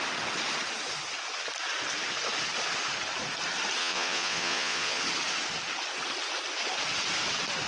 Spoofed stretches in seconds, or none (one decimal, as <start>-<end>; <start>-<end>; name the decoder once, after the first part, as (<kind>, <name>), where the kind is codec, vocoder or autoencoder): 3.8-5.0 (vocoder, Vocos)